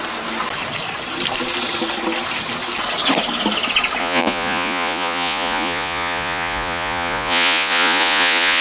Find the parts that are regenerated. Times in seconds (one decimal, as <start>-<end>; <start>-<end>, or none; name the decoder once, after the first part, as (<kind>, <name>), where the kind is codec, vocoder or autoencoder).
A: 4.0-8.6 (vocoder, Vocos)